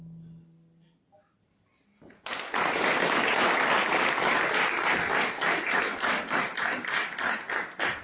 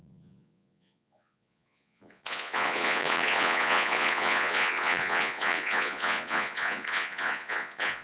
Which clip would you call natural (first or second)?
first